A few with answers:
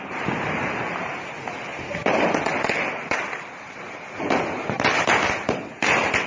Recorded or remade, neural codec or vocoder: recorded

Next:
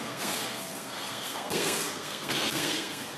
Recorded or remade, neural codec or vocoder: remade, codec, SNAC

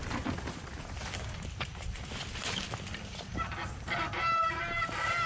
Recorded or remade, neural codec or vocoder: recorded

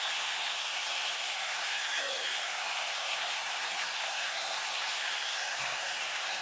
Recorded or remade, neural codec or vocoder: remade, codec, SNAC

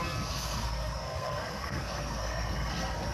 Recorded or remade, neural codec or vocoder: remade, codec, SNAC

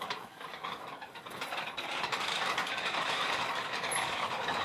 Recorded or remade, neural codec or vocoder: remade, codec, DAC